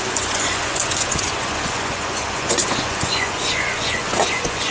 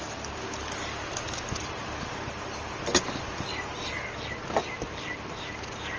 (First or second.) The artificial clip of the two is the first